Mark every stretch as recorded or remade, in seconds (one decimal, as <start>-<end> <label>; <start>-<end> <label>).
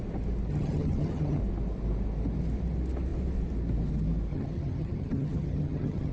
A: 0.0-0.5 recorded; 0.5-1.4 remade; 1.4-4.3 recorded; 4.3-6.1 remade